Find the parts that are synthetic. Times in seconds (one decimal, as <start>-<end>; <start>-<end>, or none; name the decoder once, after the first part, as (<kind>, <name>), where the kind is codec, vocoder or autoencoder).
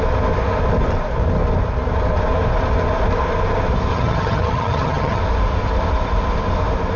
3.9-5.2 (vocoder, HiFi-GAN)